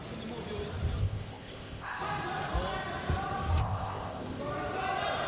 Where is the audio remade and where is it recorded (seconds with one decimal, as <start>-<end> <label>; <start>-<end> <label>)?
0.0-1.0 recorded; 1.0-2.0 remade; 2.0-3.6 recorded; 3.6-4.4 remade; 4.4-5.3 recorded